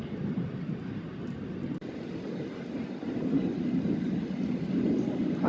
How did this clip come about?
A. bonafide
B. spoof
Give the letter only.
A